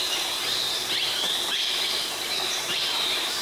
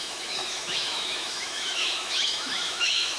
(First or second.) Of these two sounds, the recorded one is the first